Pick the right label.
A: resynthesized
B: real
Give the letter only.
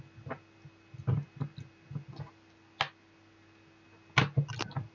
B